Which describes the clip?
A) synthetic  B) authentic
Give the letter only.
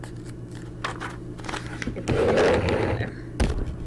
B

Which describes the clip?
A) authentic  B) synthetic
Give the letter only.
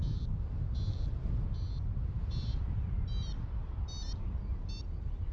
A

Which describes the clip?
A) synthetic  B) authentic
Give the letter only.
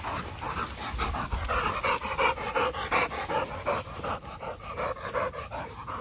B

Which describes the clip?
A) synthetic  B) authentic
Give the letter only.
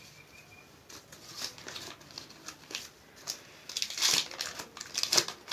B